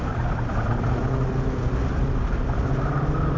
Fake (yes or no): no